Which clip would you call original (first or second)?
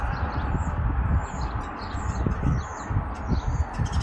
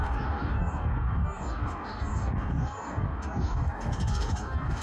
first